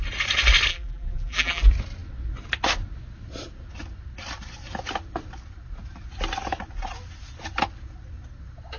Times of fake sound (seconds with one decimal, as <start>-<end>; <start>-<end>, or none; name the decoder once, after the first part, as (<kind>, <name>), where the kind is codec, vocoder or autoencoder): 0.7-1.6 (vocoder, BigVGAN v2)